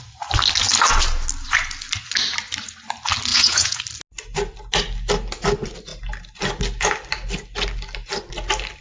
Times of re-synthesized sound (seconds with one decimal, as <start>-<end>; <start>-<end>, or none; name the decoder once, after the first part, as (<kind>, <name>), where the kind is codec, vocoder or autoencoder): 3.3-3.8 (vocoder, Vocos)

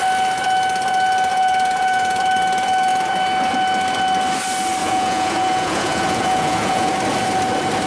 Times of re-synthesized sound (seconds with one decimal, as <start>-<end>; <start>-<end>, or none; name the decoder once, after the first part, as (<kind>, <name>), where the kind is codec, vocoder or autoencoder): 1.3-2.2 (vocoder, Vocos); 4.8-6.9

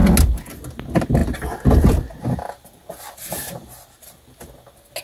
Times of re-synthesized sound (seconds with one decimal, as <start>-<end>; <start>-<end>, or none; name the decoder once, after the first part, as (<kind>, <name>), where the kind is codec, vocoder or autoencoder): none